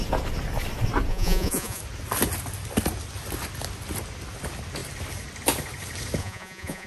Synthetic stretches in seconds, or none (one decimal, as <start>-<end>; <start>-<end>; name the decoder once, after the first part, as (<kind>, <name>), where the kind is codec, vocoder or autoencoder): 1.1-1.8 (vocoder, Vocos); 6.2-6.9